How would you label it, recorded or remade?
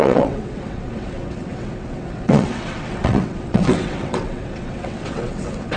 remade